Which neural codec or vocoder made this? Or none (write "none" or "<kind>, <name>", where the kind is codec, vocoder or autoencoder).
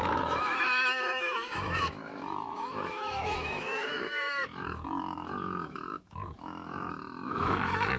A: autoencoder, DAC-VAE